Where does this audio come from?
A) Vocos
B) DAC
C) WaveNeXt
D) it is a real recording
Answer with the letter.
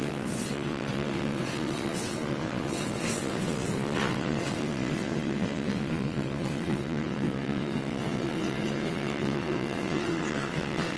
C